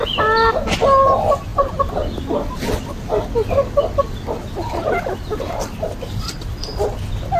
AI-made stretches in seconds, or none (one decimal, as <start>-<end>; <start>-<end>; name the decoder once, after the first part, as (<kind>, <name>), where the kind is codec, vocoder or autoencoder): none